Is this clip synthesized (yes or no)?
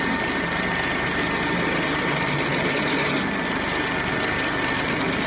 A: no